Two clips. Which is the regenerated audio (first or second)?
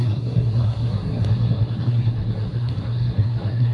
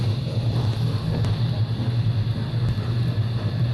first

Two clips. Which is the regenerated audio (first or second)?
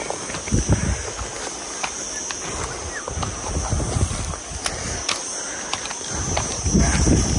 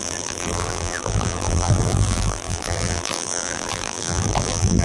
second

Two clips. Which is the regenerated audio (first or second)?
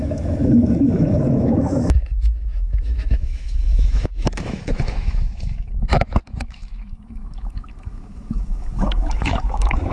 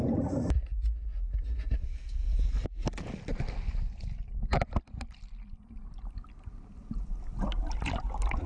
first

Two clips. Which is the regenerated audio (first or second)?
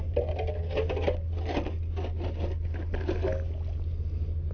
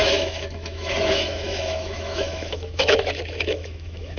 second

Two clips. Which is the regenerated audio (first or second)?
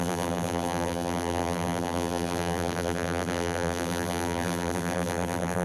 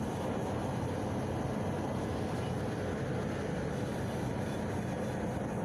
first